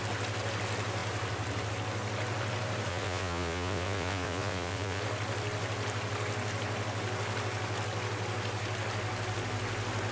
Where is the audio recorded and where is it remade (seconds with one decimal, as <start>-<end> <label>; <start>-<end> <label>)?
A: 0.0-2.9 recorded; 2.9-5.0 remade; 5.0-10.1 recorded